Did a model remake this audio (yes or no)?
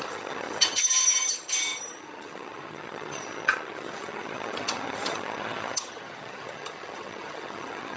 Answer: yes